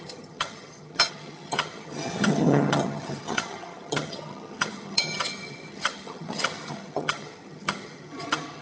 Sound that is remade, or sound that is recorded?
remade